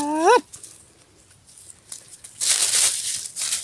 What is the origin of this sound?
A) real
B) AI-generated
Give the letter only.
A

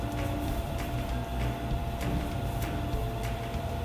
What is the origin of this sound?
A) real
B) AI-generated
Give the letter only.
B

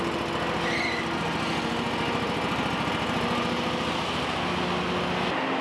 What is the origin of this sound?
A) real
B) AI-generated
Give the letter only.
A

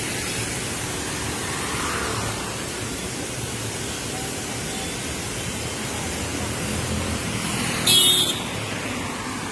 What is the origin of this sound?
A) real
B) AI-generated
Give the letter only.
A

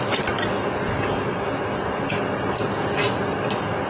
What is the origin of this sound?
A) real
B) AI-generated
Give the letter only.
A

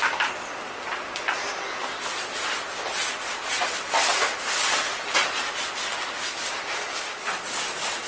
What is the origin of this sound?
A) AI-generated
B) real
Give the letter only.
B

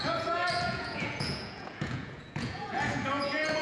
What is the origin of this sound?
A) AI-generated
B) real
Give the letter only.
A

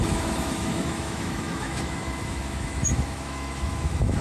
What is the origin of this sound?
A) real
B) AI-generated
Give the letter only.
B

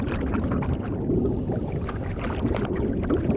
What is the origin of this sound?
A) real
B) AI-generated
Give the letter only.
B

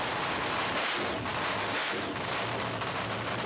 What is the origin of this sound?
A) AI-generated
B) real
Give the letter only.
B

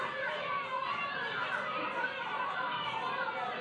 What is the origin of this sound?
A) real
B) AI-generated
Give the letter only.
A